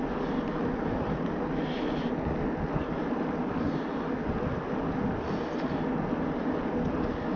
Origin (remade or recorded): recorded